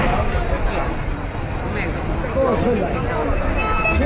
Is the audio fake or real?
real